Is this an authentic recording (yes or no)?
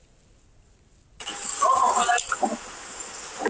yes